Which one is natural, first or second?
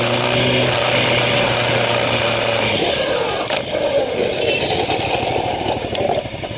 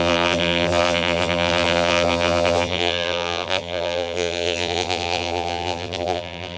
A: first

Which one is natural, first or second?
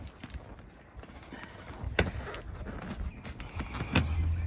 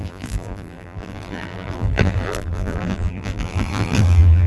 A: first